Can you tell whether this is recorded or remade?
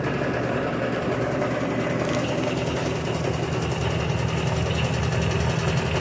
recorded